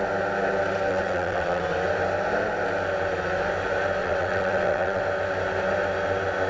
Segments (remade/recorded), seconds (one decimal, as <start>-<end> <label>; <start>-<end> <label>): 0.0-0.9 recorded; 0.9-1.6 remade; 1.6-4.0 recorded; 4.0-5.0 remade; 5.0-6.5 recorded

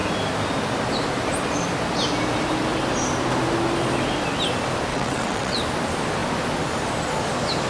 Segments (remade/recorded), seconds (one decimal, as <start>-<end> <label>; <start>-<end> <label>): 0.0-4.9 recorded; 4.9-5.6 remade; 5.6-7.7 recorded